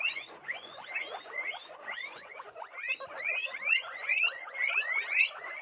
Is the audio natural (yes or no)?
no